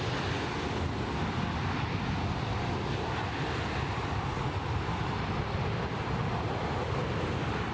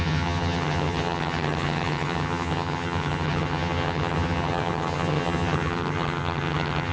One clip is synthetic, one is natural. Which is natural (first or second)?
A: first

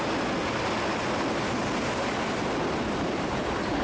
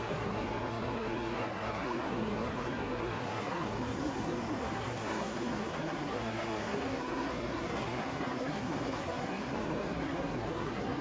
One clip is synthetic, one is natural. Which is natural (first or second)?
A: first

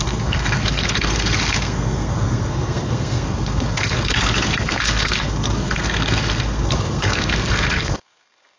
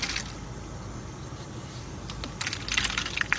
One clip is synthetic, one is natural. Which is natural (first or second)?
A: second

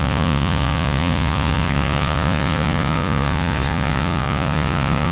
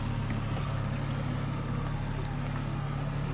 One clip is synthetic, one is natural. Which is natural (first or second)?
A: second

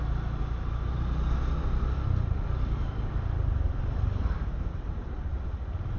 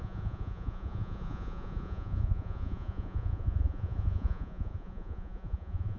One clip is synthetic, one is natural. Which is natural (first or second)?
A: first